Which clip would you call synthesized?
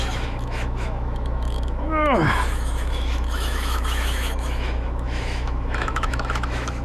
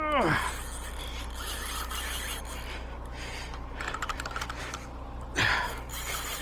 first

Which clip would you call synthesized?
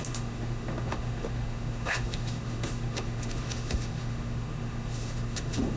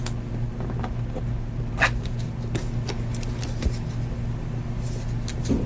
first